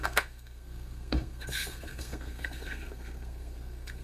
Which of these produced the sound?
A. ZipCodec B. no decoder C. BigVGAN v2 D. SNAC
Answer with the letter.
D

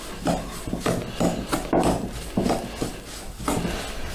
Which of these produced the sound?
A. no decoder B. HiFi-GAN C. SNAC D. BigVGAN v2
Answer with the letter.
A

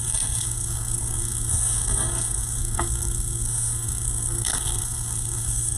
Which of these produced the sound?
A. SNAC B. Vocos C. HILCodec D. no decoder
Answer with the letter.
A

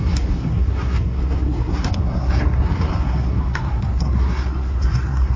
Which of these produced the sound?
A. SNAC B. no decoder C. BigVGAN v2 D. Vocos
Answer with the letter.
A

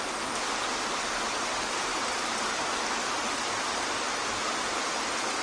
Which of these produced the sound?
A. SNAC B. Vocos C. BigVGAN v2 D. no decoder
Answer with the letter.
D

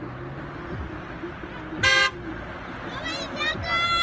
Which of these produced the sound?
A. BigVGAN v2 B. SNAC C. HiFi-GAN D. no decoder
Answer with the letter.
D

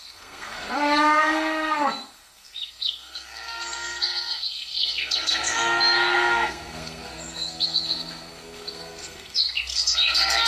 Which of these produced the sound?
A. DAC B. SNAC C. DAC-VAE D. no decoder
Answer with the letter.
B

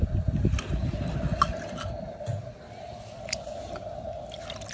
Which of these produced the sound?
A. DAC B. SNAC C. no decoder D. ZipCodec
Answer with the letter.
C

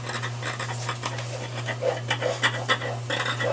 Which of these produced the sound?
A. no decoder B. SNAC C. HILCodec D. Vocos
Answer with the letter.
A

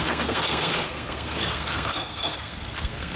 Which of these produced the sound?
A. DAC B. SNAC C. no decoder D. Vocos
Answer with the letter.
B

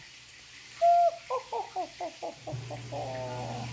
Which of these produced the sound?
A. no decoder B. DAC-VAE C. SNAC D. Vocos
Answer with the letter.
A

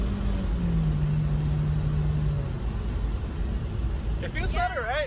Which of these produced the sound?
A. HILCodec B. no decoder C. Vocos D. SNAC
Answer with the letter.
B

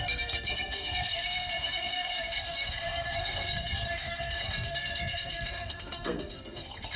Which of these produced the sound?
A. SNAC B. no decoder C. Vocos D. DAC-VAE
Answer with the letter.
A